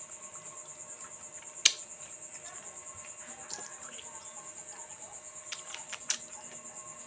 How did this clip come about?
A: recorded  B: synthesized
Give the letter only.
A